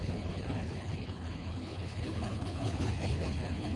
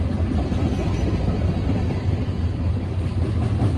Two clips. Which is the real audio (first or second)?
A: second